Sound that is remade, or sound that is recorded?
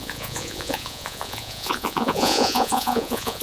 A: remade